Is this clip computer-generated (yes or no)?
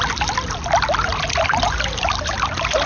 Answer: no